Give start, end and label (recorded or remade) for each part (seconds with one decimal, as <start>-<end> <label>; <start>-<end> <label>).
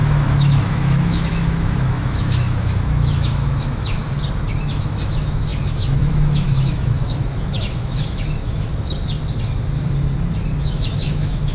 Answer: 0.0-4.0 remade; 4.0-4.7 recorded; 4.7-8.7 remade; 8.7-10.6 recorded; 10.6-11.5 remade